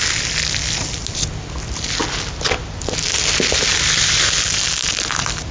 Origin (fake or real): real